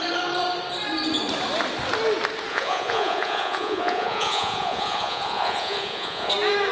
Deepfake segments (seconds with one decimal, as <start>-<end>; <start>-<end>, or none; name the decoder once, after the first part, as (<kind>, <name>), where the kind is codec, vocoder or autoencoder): 2.5-6.3 (vocoder, Vocos)